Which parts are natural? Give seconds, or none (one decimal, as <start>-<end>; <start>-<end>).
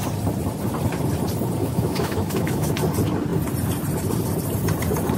0.0-1.6; 2.7-5.2